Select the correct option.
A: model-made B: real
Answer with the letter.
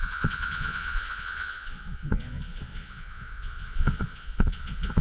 A